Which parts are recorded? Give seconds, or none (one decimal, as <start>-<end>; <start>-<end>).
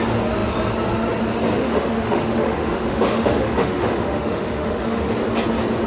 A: 0.0-1.6; 5.1-5.9